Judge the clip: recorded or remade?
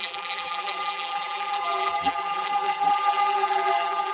remade